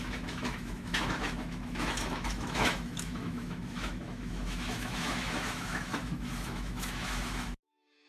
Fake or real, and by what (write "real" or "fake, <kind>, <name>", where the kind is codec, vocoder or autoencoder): fake, autoencoder, DAC-VAE